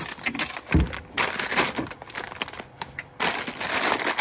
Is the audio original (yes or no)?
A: yes